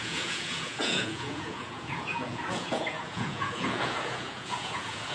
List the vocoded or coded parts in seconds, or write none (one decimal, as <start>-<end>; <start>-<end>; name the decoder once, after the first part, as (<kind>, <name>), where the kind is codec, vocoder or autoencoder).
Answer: 0.0-5.1 (vocoder, Vocos)